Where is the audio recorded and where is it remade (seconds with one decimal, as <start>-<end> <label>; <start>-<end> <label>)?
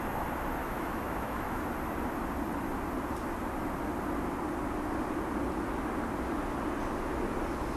0.0-0.6 recorded; 0.6-1.6 remade; 1.6-7.8 recorded